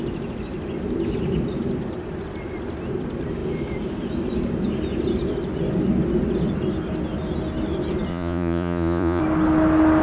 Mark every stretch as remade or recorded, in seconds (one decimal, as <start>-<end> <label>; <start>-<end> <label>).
0.0-8.1 recorded; 8.1-9.2 remade; 9.2-10.0 recorded